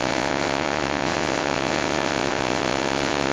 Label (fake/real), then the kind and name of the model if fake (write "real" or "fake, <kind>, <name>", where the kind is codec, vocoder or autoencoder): fake, vocoder, WaveNeXt